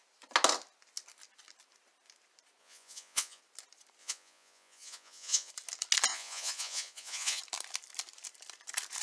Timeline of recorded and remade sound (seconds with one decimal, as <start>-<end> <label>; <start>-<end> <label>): 0.0-2.6 recorded; 2.6-3.4 remade; 3.4-4.0 recorded; 4.0-5.5 remade; 5.5-6.1 recorded; 6.1-7.4 remade; 7.4-9.0 recorded